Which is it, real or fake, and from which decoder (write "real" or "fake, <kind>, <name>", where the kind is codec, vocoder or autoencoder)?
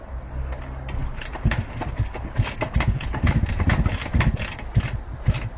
real